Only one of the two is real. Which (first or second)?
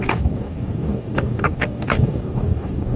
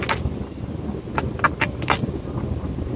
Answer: second